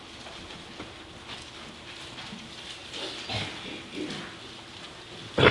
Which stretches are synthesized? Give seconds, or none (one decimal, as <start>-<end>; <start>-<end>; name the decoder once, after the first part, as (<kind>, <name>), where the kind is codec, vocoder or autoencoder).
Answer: none